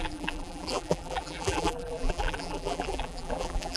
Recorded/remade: remade